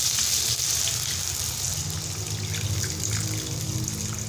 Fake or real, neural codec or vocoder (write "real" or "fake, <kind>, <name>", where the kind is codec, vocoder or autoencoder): real